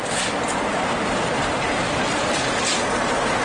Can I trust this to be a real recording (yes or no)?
yes